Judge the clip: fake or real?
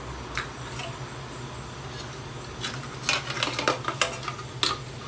real